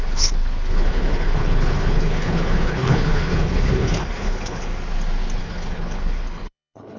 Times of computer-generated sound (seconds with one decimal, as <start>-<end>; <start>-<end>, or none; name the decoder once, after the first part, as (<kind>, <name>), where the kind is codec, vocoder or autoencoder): 0.0-4.7 (codec, HILCodec); 5.4-7.0